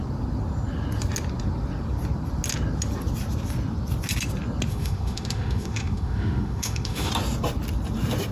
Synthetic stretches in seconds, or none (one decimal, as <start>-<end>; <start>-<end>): 4.7-7.1